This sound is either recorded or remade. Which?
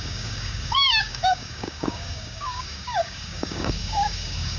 remade